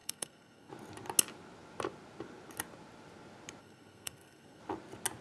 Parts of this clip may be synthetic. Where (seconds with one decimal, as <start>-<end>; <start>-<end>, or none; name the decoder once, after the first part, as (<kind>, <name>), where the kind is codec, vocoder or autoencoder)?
0.0-0.7 (codec, SNAC); 3.6-4.6

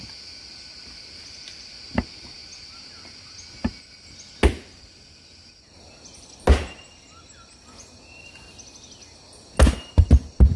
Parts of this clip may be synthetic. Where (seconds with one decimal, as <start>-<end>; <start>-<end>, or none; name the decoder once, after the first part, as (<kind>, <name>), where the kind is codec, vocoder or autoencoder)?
none

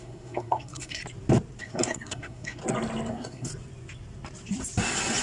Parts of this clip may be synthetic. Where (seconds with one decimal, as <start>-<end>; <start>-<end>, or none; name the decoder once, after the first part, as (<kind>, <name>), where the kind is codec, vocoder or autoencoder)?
0.0-1.0 (codec, SNAC); 1.6-2.6; 3.1-3.5

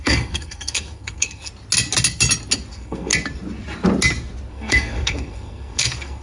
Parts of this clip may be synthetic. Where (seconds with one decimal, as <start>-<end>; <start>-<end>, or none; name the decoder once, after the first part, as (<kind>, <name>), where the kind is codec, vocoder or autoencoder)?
0.0-1.5 (codec, SNAC); 2.7-3.1; 4.5-6.2